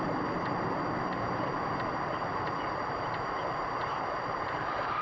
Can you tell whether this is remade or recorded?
remade